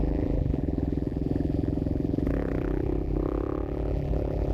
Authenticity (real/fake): fake